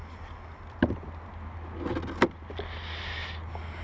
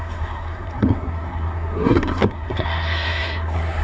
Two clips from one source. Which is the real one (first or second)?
first